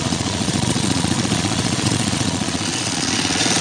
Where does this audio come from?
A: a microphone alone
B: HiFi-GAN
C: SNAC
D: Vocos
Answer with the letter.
D